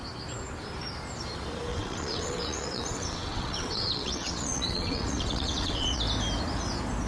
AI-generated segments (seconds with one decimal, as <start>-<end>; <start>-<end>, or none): 1.7-6.0